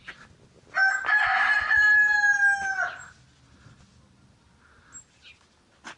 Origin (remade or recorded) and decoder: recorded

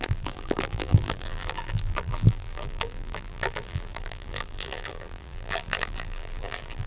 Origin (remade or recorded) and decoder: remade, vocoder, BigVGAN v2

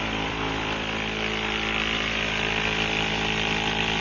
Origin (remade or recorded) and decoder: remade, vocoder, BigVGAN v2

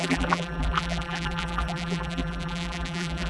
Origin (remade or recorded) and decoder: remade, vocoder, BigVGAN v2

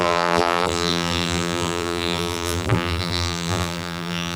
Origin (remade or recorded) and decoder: remade, vocoder, BigVGAN v2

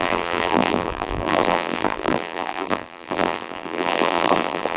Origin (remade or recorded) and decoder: remade, vocoder, BigVGAN v2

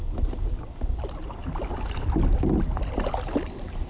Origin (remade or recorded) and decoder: recorded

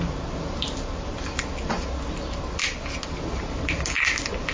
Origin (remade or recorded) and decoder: recorded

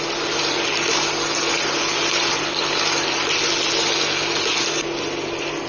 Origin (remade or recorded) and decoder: recorded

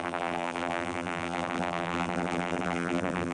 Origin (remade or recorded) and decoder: remade, vocoder, BigVGAN v2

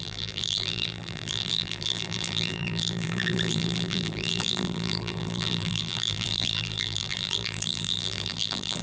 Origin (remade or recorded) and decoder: remade, vocoder, BigVGAN v2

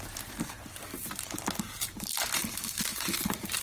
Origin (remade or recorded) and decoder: remade, vocoder, BigVGAN v2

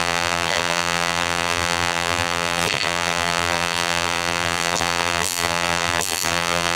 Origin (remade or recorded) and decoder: remade, vocoder, BigVGAN v2